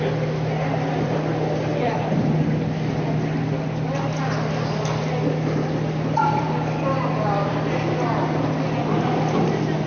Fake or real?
fake